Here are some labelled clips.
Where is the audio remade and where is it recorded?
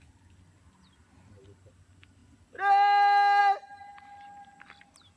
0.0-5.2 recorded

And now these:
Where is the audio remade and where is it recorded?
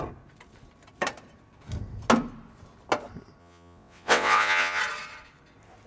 0.0-3.4 recorded; 3.4-4.8 remade; 4.8-5.9 recorded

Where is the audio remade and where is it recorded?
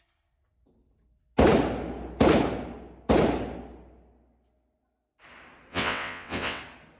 0.0-5.7 recorded; 5.7-6.6 remade; 6.6-7.0 recorded